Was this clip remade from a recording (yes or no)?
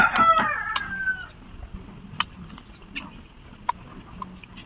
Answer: no